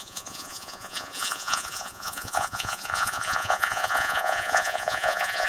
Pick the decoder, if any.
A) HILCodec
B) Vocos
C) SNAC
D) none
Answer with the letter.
B